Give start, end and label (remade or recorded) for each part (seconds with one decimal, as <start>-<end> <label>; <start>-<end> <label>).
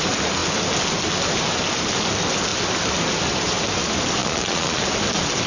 0.0-4.2 recorded; 4.2-4.8 remade; 4.8-5.5 recorded